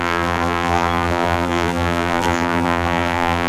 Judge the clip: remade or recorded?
remade